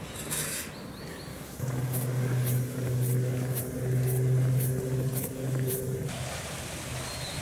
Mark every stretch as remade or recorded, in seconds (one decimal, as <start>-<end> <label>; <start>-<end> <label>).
0.0-1.3 recorded; 1.3-3.6 remade; 3.6-5.1 recorded; 5.1-5.7 remade; 5.7-7.4 recorded